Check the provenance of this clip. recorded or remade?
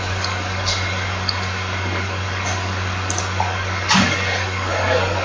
remade